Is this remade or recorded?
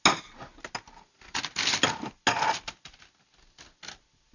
recorded